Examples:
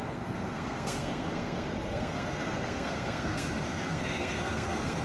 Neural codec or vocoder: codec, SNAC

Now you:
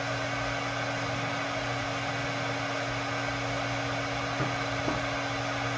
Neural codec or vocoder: none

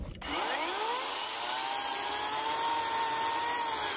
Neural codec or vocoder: none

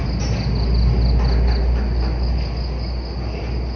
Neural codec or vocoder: none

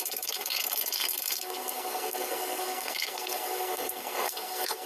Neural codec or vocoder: codec, SNAC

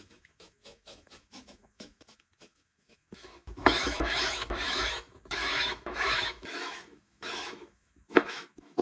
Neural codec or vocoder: autoencoder, DAC-VAE